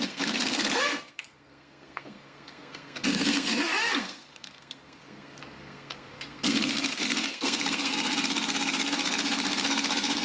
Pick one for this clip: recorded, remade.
remade